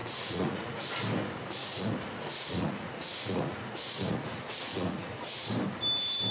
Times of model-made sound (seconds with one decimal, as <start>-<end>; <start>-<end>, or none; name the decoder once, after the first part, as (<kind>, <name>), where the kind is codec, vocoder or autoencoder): 0.0-0.8 (vocoder, Vocos); 1.7-5.5